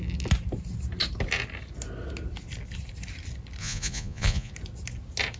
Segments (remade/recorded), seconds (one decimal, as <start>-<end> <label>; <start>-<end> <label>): 0.0-3.6 recorded; 3.6-4.5 remade; 4.5-5.4 recorded